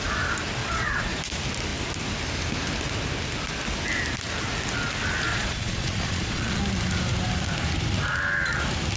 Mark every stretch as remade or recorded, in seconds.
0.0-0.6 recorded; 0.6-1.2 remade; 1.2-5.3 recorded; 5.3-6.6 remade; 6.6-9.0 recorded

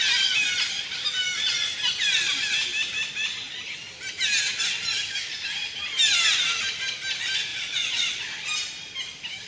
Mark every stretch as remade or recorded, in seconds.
0.0-7.5 recorded; 7.5-8.2 remade; 8.2-9.5 recorded

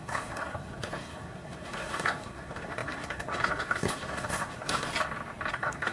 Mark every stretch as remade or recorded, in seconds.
0.0-4.9 remade; 4.9-5.5 recorded; 5.5-5.9 remade

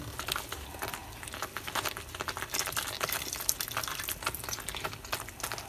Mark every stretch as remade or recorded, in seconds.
0.0-5.7 recorded